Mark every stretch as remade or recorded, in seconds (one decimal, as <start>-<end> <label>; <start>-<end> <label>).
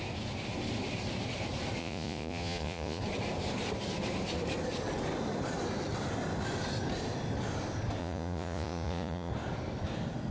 0.0-1.8 recorded; 1.8-3.0 remade; 3.0-8.0 recorded; 8.0-9.3 remade; 9.3-10.3 recorded